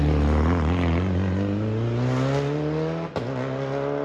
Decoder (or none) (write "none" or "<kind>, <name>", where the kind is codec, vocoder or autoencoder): none